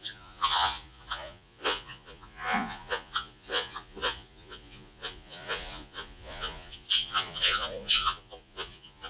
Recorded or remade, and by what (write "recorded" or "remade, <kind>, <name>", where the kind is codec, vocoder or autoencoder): remade, vocoder, Vocos